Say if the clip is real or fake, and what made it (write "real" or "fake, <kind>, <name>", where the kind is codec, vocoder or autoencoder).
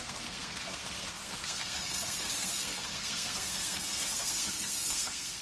fake, codec, SNAC